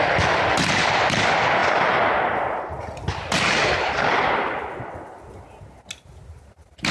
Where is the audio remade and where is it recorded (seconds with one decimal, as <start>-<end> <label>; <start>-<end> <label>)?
0.0-6.9 recorded